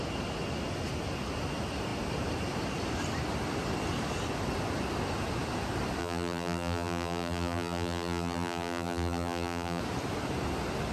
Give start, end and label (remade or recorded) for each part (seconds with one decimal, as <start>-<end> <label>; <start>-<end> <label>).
0.0-6.0 recorded; 6.0-9.8 remade; 9.8-10.9 recorded